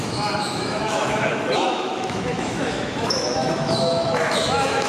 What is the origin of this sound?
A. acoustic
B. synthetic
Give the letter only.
B